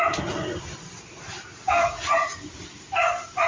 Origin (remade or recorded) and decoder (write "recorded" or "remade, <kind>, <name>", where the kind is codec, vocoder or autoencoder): recorded